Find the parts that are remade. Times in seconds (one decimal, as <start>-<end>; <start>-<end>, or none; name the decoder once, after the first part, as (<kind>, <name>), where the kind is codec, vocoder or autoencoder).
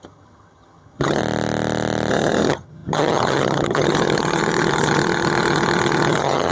0.0-1.2 (vocoder, HiFi-GAN); 2.1-6.5